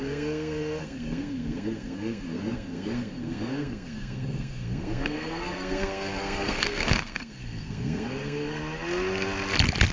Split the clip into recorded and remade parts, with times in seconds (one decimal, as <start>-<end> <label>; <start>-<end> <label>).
0.0-8.6 remade; 8.6-9.9 recorded